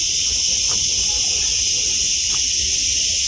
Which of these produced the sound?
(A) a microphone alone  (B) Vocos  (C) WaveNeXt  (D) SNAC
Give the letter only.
A